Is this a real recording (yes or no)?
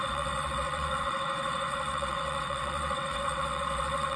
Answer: no